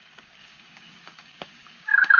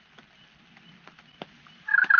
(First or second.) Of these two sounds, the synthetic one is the first